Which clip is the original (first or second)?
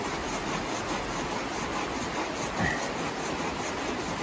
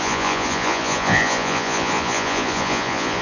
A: first